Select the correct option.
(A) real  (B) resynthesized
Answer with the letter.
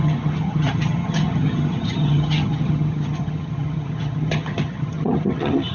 B